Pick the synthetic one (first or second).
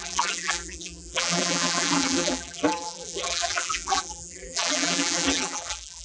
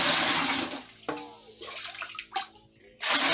first